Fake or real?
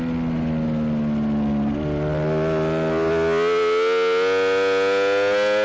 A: real